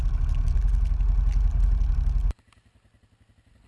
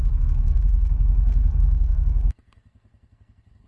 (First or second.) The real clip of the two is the first